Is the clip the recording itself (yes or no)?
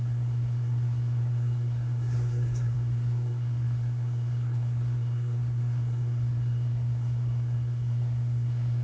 no